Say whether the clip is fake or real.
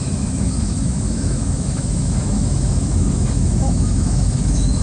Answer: fake